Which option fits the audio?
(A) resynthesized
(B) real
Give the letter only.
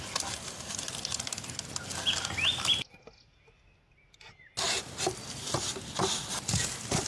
B